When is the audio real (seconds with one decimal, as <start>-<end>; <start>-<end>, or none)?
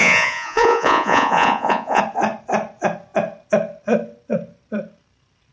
2.0-5.5